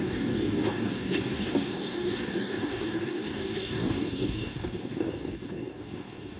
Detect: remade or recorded remade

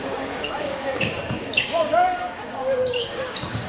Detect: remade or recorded remade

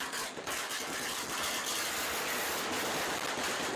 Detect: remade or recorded recorded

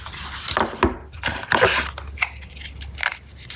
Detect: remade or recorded recorded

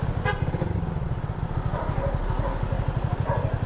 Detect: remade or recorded recorded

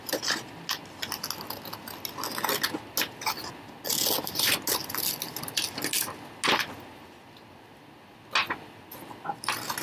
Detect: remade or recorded recorded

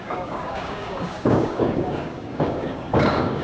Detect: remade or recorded remade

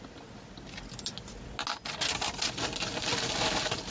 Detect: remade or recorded recorded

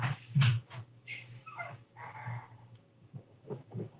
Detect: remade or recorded remade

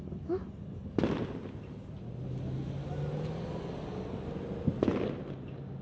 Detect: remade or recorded recorded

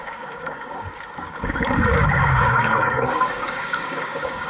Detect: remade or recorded remade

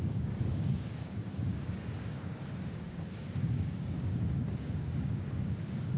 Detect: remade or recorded remade